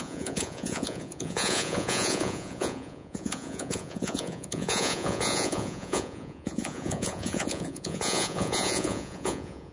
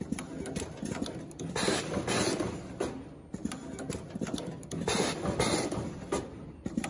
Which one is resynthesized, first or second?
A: first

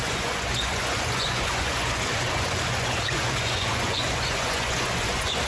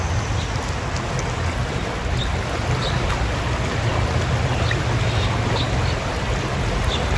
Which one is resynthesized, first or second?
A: first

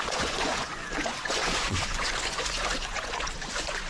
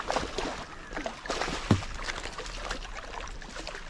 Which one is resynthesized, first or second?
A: first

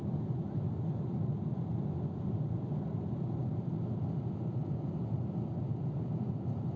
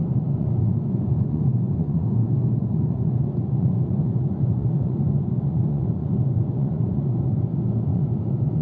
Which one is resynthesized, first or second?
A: second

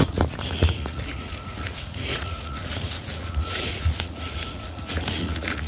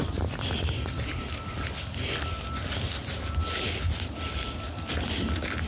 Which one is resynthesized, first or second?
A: first